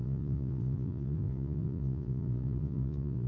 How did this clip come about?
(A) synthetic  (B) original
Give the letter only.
A